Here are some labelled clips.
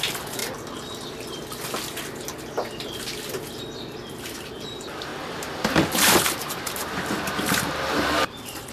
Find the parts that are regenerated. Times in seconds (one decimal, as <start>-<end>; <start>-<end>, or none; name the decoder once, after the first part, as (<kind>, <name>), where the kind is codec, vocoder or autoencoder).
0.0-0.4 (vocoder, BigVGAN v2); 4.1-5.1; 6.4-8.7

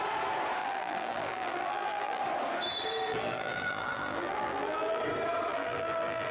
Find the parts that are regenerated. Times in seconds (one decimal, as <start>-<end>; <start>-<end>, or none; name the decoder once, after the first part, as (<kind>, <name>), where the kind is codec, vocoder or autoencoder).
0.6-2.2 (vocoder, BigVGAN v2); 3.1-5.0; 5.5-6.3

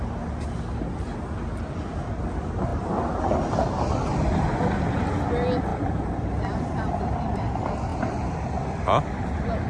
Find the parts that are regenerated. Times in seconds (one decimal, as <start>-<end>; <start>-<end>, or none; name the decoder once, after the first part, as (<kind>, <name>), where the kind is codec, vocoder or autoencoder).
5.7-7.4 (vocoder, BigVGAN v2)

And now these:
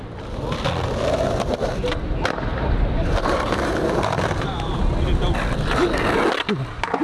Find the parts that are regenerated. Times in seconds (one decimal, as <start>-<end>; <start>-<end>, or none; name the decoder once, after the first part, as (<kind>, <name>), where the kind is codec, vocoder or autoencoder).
2.5-4.8 (vocoder, BigVGAN v2)

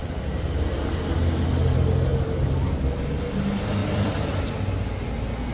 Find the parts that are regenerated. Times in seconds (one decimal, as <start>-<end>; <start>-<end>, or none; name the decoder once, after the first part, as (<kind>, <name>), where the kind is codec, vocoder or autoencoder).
2.1-3.2 (vocoder, BigVGAN v2); 3.8-4.4